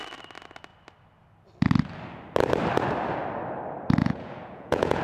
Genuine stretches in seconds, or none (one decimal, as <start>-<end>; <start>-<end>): 0.0-4.0